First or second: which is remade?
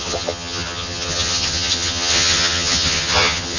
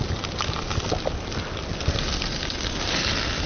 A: first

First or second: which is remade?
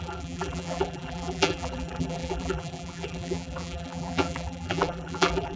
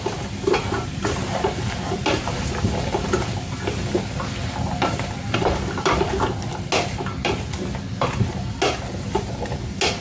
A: first